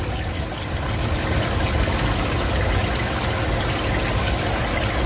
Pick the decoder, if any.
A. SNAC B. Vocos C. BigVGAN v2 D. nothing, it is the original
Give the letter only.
D